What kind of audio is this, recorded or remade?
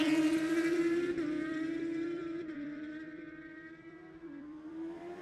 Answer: remade